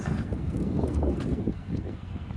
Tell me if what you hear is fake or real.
fake